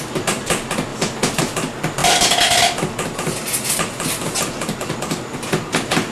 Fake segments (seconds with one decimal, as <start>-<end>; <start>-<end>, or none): none